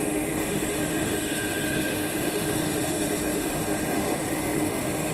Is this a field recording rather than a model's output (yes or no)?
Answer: no